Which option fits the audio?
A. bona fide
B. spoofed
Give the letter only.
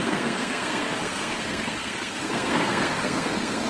B